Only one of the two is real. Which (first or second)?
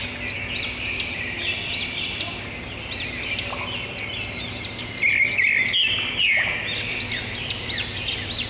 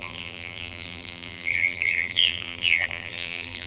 first